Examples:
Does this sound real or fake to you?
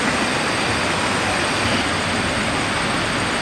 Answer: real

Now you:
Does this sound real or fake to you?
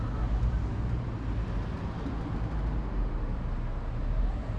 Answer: real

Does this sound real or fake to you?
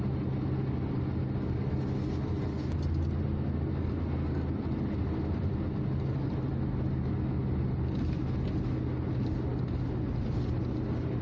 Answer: real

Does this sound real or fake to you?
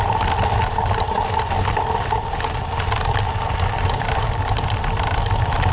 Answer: real